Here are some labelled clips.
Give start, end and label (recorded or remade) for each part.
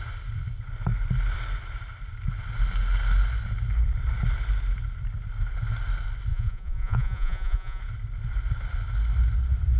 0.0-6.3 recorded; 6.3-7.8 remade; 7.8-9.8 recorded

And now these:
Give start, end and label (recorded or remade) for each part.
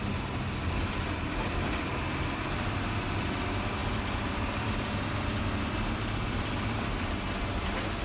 0.0-8.0 recorded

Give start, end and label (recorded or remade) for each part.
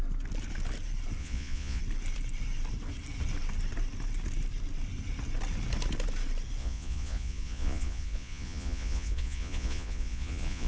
0.0-1.2 recorded; 1.2-1.8 remade; 1.8-6.6 recorded; 6.6-10.7 remade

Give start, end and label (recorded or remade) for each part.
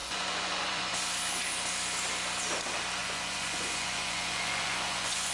0.0-0.9 remade; 0.9-3.0 recorded; 3.0-5.3 remade